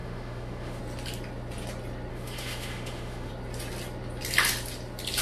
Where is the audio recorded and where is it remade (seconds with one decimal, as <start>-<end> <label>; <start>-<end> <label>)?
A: 0.0-0.8 remade; 0.8-2.1 recorded; 2.1-3.3 remade; 3.3-5.2 recorded